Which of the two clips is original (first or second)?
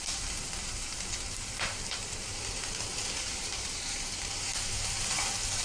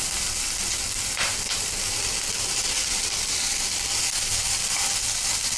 second